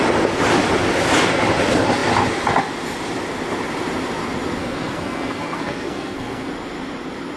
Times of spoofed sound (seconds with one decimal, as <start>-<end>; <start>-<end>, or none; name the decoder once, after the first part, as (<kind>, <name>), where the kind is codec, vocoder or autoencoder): 4.6-6.5 (codec, SNAC)